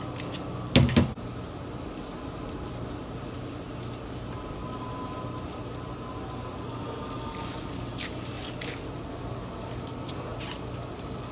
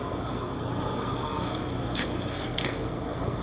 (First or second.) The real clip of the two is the first